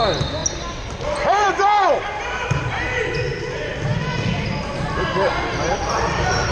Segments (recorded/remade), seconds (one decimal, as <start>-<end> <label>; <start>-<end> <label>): 0.0-0.4 recorded; 0.4-2.6 remade; 2.6-5.7 recorded; 5.7-6.5 remade